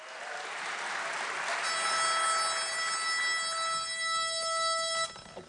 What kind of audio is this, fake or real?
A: real